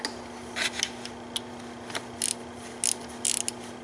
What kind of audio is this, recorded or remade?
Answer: recorded